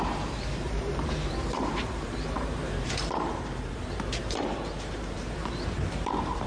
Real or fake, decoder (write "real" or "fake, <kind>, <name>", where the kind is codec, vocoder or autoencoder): fake, vocoder, BigVGAN v2